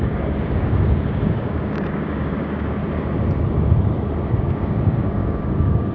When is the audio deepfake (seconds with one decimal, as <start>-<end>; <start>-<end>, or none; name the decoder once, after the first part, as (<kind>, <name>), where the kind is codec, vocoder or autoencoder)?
0.0-2.8 (codec, DAC); 4.4-5.9